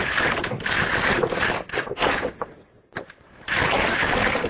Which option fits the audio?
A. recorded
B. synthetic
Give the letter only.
A